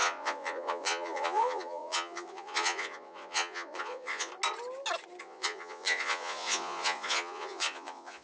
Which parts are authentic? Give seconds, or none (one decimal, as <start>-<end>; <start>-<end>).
4.3-5.2